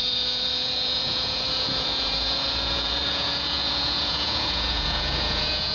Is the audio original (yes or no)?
no